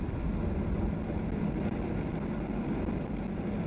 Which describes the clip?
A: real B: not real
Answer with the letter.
A